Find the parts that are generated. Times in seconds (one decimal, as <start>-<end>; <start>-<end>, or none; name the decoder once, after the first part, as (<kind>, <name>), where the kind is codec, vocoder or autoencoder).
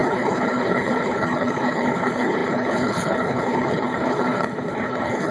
0.0-5.3 (codec, HILCodec)